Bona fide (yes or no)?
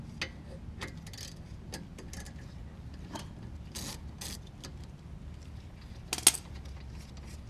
yes